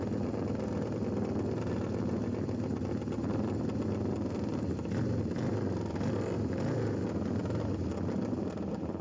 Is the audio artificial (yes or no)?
no